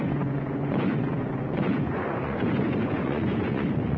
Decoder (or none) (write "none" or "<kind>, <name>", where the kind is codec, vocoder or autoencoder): vocoder, Vocos